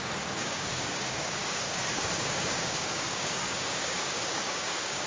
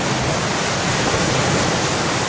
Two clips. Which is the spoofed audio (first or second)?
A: first